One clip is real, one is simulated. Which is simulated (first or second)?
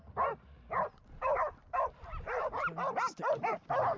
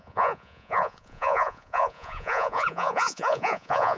second